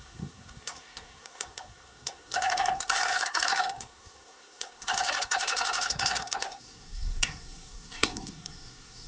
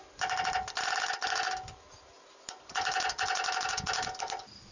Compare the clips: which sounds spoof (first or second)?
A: first